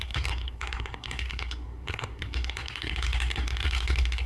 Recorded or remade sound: remade